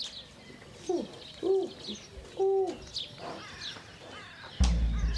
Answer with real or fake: real